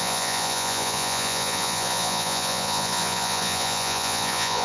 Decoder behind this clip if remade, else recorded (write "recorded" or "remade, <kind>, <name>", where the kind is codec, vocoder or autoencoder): remade, vocoder, Vocos